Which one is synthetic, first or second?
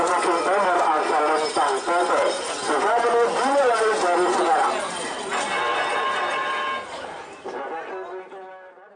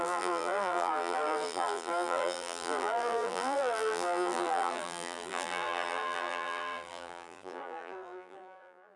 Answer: second